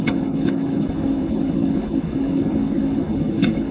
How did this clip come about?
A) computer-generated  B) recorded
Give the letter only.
A